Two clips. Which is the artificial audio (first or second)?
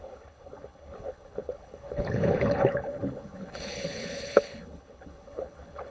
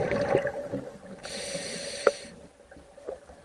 first